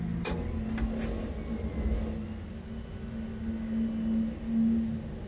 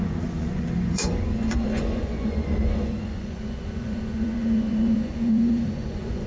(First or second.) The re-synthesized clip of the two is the second